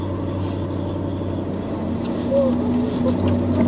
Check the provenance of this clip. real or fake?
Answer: real